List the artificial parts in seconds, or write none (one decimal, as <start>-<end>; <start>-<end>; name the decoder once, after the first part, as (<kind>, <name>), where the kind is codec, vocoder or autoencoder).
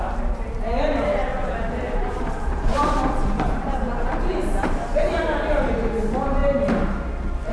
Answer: 1.3-5.7 (vocoder, BigVGAN v2)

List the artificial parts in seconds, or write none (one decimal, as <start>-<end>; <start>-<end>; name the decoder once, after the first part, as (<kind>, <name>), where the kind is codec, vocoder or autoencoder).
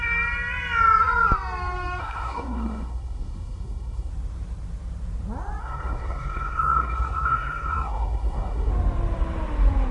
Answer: 2.0-4.1 (codec, SNAC); 5.6-8.7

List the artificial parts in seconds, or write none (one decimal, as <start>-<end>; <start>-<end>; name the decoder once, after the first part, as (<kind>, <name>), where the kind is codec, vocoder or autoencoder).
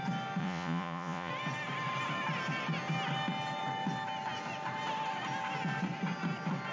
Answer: 0.4-1.3 (vocoder, Vocos)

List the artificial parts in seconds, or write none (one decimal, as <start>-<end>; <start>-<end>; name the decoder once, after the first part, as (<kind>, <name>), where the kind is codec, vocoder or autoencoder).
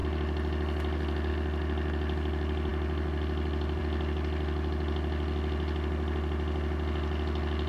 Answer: none